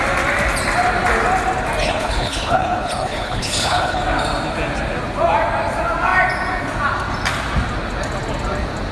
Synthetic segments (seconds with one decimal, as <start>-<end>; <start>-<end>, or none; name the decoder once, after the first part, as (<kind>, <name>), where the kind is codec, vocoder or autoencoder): 1.8-4.0 (codec, HILCodec)